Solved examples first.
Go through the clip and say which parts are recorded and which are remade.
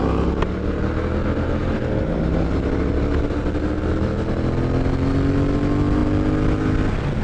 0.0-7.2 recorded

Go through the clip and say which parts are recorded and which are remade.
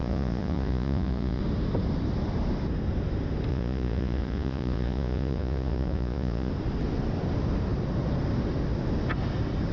0.0-1.4 remade; 1.4-3.5 recorded; 3.5-6.5 remade; 6.5-9.7 recorded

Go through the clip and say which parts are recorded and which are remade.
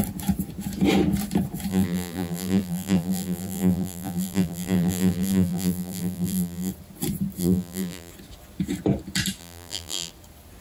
0.0-1.7 recorded; 1.7-6.7 remade; 6.7-7.4 recorded; 7.4-8.1 remade; 8.1-9.4 recorded; 9.4-10.1 remade; 10.1-10.6 recorded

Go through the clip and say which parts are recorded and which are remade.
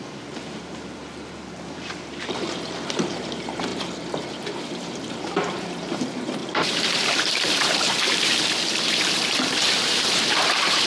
0.0-10.9 remade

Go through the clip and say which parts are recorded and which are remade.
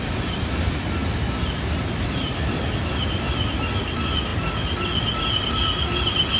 0.0-6.4 recorded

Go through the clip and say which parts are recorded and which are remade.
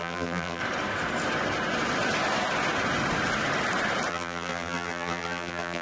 0.0-0.6 remade; 0.6-4.1 recorded; 4.1-5.8 remade